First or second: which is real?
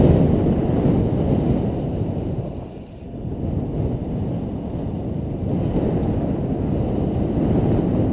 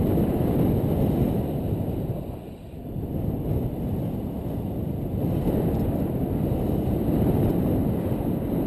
first